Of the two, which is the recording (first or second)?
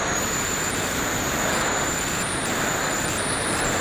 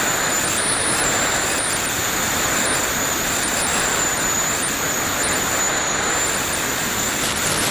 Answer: second